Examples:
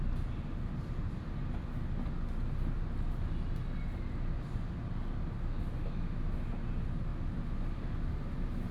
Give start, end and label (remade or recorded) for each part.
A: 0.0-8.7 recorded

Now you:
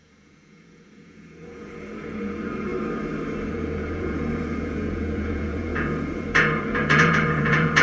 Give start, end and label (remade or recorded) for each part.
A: 0.0-2.7 remade; 2.7-3.5 recorded; 3.5-7.8 remade